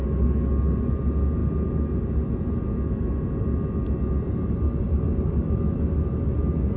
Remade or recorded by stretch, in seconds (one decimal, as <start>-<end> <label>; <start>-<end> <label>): 0.0-6.8 recorded